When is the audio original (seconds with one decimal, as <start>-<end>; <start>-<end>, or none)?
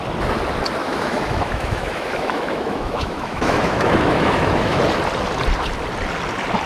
0.0-0.8; 4.8-6.7